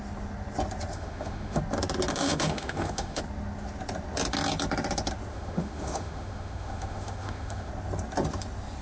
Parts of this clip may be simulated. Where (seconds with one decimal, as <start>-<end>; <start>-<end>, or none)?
0.9-1.6; 2.1-3.2; 5.3-7.7